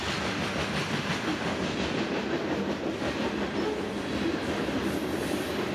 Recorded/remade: recorded